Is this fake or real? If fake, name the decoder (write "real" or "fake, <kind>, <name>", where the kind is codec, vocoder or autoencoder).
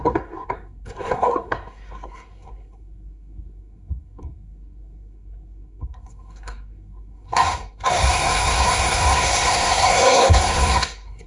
fake, codec, SNAC